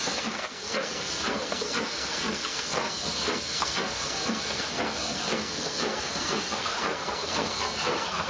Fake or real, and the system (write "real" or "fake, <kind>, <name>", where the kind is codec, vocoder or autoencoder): fake, codec, SNAC